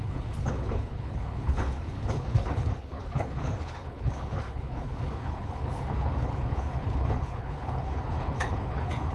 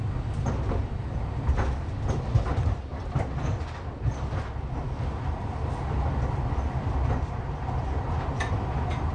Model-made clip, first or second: first